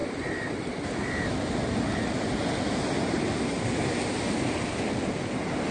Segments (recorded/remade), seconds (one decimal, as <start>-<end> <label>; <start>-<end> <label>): 0.0-5.7 recorded

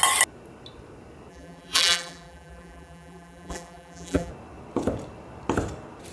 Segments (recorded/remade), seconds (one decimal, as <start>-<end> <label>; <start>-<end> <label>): 0.0-1.3 recorded; 1.3-4.3 remade; 4.3-6.1 recorded

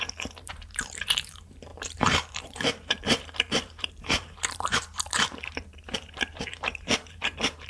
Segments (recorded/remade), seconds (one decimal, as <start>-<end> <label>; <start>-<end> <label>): 0.0-7.7 remade

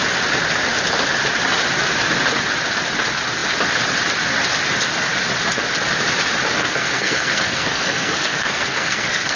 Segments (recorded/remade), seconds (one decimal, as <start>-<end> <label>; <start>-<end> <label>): 0.0-6.6 recorded; 6.6-9.4 remade

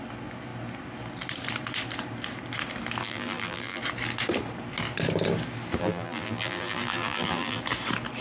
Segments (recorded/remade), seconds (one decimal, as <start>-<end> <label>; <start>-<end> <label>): 0.0-3.0 recorded; 3.0-3.8 remade; 3.8-5.8 recorded; 5.8-7.6 remade; 7.6-8.2 recorded

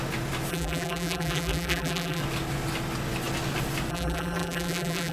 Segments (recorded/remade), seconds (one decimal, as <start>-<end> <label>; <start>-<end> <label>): 0.0-0.5 recorded; 0.5-2.2 remade; 2.2-3.9 recorded; 3.9-5.1 remade

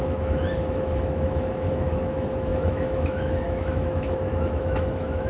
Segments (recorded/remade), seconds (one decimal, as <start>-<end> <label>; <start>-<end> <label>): 0.0-5.3 remade

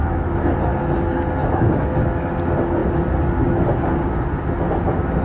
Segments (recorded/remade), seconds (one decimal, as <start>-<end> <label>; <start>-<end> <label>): 0.0-0.6 remade; 0.6-1.4 recorded; 1.4-1.9 remade; 1.9-5.2 recorded